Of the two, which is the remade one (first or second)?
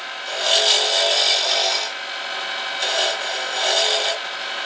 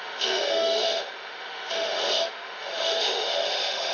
second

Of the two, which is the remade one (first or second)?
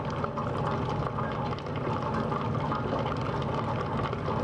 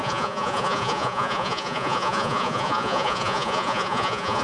second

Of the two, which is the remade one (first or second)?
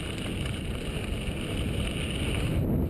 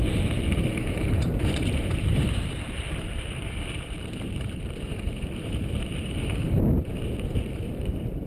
second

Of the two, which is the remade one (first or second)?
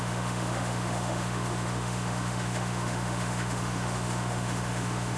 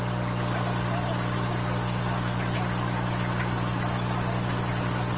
first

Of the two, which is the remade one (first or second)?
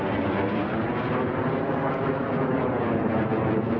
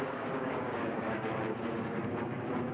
second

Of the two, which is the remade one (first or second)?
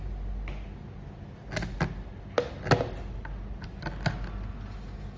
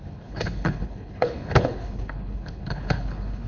second